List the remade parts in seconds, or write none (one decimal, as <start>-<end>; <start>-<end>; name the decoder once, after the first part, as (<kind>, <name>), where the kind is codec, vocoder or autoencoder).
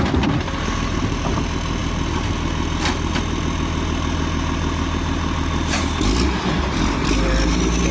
none